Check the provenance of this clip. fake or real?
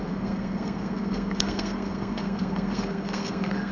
fake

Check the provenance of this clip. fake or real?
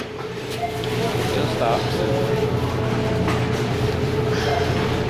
real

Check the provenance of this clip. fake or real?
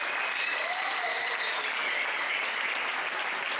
fake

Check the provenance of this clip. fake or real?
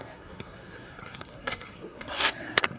fake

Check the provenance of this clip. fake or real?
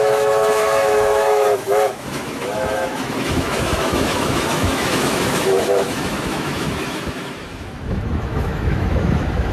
fake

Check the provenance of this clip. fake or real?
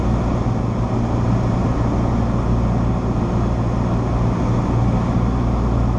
real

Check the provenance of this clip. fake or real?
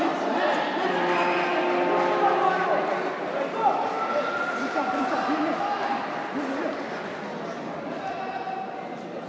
real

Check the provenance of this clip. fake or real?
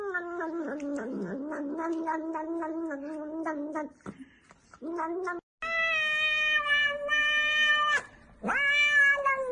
real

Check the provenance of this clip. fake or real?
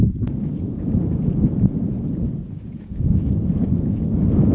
fake